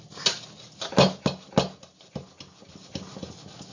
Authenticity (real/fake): real